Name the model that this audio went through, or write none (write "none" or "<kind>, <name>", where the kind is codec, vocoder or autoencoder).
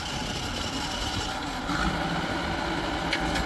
none